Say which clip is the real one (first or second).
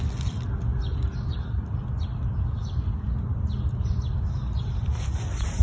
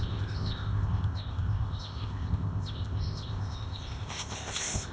first